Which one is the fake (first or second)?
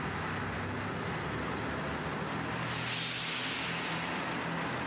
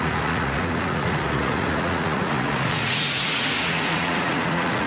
second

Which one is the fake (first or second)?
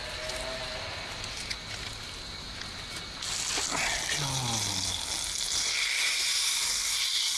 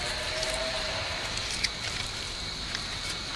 second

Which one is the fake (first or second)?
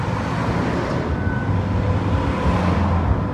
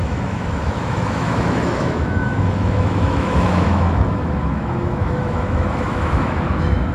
second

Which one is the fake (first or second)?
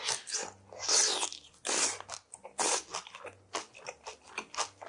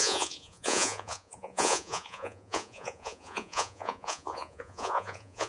second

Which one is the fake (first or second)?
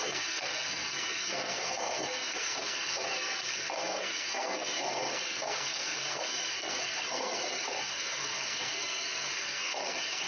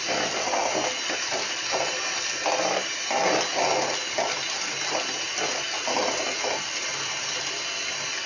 first